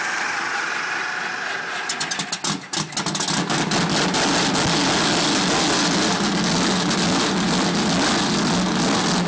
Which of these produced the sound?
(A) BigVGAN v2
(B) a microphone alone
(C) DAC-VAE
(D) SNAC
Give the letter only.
B